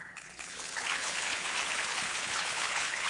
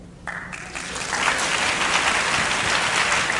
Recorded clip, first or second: second